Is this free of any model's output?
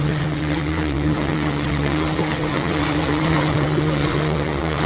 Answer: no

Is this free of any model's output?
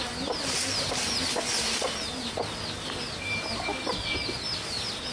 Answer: yes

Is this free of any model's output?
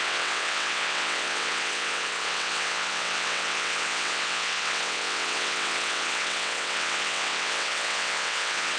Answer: no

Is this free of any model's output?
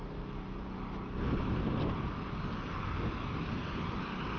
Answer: yes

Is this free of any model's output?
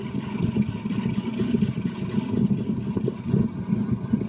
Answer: yes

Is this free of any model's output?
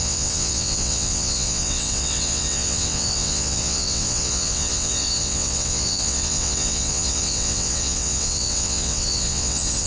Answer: no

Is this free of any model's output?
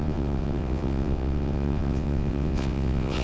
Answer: no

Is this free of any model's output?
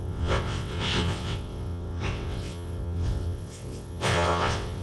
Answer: no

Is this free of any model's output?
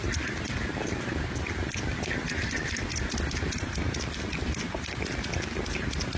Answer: yes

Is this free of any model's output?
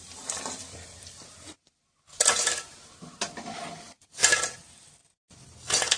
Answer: yes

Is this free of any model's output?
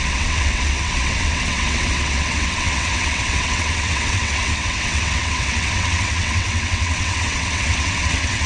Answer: no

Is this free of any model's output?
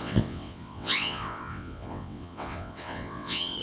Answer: no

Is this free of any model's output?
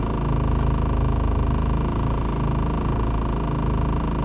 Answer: yes